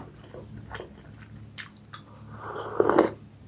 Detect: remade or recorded recorded